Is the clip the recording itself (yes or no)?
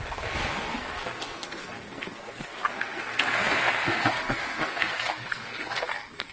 no